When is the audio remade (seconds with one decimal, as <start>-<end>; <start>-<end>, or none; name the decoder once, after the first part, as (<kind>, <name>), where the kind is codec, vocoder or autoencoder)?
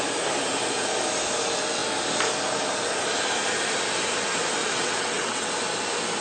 4.6-5.5 (vocoder, WaveNeXt)